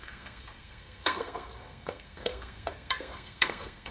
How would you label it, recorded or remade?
remade